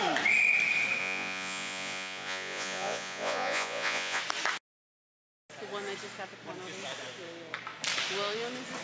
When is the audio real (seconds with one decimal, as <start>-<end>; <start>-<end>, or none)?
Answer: 0.0-1.0; 4.2-8.8

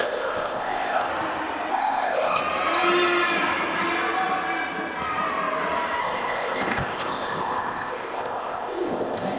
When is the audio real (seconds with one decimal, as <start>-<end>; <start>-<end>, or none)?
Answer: 1.1-1.7; 2.4-6.0

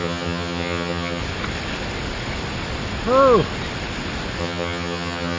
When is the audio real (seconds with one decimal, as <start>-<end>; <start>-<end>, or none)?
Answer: 1.2-4.4